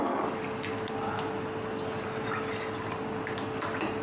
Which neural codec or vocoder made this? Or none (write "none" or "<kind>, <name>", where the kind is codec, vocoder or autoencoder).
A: none